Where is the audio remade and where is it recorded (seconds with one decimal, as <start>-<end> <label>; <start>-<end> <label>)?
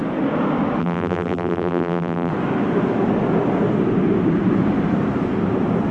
0.0-0.8 recorded; 0.8-2.3 remade; 2.3-5.9 recorded